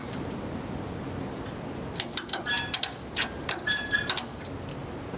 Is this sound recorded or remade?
recorded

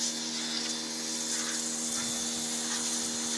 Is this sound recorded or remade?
recorded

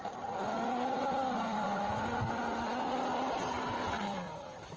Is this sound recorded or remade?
recorded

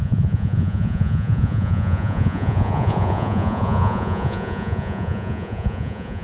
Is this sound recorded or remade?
remade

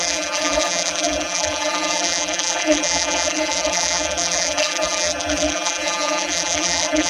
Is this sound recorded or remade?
remade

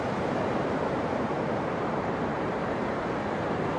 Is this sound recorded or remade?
remade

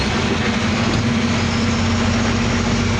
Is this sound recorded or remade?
recorded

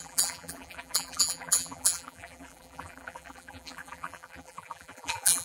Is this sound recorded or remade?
remade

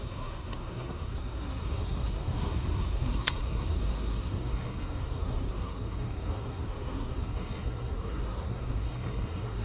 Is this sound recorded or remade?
remade